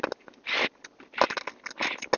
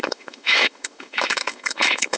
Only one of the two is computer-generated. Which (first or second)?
second